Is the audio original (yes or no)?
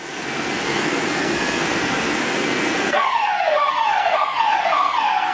no